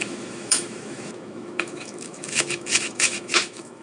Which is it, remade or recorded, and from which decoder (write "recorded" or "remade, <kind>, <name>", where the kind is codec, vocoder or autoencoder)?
remade, autoencoder, DAC-VAE